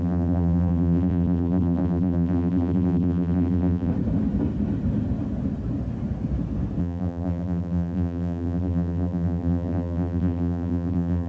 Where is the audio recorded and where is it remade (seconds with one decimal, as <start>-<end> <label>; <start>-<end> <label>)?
0.0-3.9 remade; 3.9-6.8 recorded; 6.8-11.3 remade